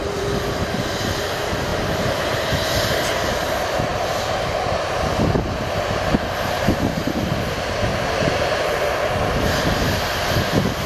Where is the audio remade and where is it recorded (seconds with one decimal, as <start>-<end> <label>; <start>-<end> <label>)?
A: 0.0-10.9 recorded